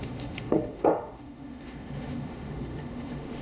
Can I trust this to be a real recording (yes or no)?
no